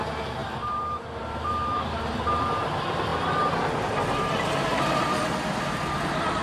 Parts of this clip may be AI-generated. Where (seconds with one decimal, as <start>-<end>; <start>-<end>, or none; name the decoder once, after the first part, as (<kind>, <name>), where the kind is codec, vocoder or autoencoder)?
0.4-2.1 (vocoder, BigVGAN v2)